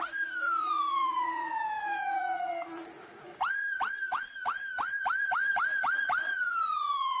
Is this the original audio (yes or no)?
no